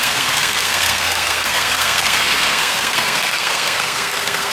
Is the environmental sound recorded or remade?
remade